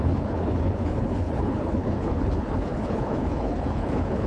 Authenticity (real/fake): fake